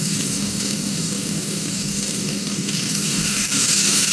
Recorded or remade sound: remade